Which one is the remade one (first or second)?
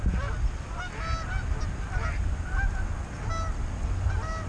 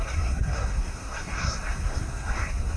second